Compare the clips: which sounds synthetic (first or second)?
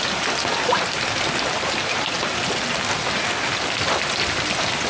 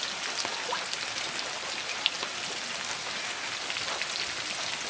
first